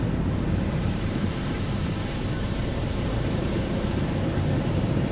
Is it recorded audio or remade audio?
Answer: remade